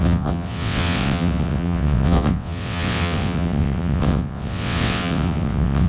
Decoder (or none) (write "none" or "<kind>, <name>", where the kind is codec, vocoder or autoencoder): vocoder, WaveNeXt